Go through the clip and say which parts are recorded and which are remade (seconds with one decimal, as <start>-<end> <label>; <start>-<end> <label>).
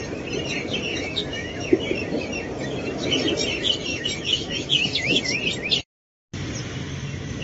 0.0-0.9 recorded; 0.9-1.8 remade; 1.8-3.9 recorded; 3.9-5.2 remade; 5.2-7.4 recorded